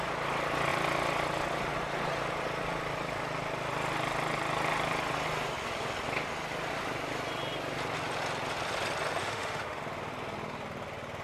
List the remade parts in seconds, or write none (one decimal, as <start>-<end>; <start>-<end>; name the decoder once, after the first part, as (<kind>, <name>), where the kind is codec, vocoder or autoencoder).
9.2-9.8 (autoencoder, DAC-VAE)